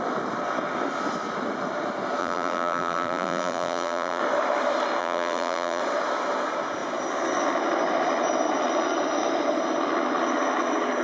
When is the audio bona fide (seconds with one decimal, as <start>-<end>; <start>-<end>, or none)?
0.0-2.2; 4.2-5.0; 5.8-11.0